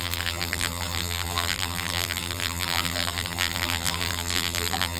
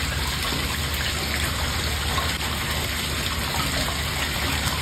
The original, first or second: second